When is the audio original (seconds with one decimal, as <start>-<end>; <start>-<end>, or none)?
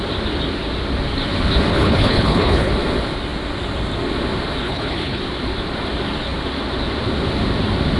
0.0-1.7; 2.7-4.6; 5.2-8.0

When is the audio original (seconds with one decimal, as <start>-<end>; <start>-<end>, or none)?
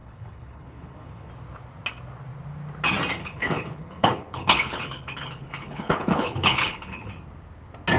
1.3-3.2; 7.1-8.0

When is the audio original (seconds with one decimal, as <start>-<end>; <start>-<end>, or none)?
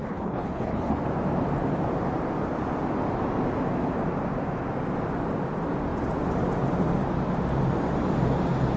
1.0-8.8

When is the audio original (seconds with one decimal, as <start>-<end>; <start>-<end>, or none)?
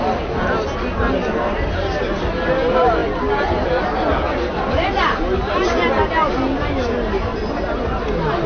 0.0-8.5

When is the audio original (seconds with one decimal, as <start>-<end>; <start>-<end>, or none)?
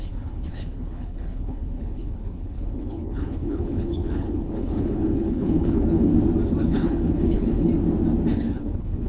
6.1-6.6; 7.7-8.3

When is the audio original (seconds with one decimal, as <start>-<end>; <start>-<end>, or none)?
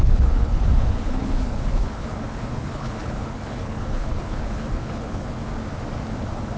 5.5-6.6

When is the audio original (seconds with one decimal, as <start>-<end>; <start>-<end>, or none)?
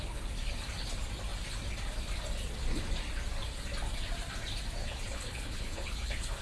0.0-4.8